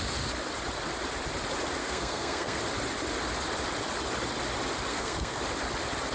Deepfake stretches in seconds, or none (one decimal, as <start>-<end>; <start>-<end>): 1.8-2.6; 4.9-5.4